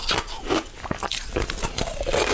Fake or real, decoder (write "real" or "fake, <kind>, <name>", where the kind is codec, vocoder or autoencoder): real